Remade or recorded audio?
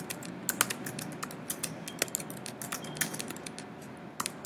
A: recorded